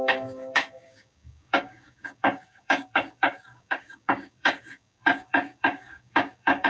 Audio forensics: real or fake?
fake